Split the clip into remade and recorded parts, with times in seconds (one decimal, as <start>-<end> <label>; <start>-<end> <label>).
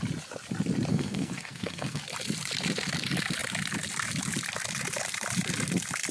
0.0-0.9 recorded; 0.9-2.0 remade; 2.0-6.1 recorded